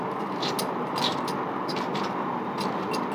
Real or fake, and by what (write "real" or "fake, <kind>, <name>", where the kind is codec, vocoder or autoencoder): real